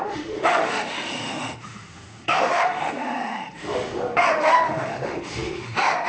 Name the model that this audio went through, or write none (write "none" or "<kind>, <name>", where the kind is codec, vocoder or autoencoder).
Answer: autoencoder, DAC-VAE